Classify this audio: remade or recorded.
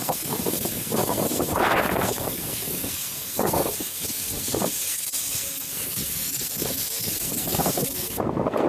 remade